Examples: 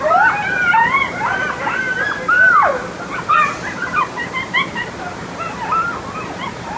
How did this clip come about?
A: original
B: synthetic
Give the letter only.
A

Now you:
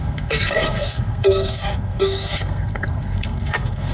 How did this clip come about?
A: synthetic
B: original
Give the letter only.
A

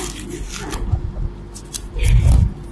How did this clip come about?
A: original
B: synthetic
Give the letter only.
A